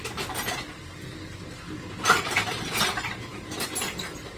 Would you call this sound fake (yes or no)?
no